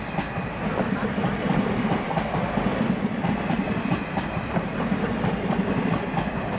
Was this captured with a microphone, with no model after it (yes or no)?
yes